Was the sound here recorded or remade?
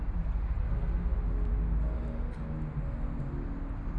recorded